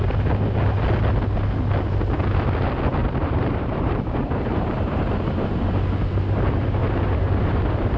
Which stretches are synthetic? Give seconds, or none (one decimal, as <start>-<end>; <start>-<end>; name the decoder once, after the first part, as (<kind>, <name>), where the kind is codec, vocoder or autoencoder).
3.0-5.7 (vocoder, BigVGAN v2); 6.8-7.6